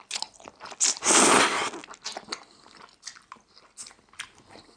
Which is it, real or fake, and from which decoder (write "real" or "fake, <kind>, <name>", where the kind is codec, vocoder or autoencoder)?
real